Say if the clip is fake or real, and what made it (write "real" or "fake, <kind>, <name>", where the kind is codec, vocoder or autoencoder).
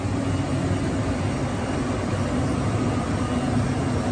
real